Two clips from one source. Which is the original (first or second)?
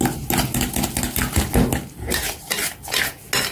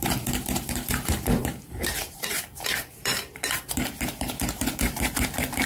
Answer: first